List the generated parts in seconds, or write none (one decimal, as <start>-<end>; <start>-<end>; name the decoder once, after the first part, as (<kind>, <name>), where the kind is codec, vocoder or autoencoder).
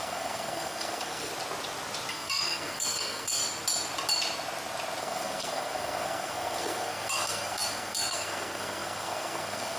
0.0-1.3 (codec, SNAC); 2.1-3.4; 5.0-9.8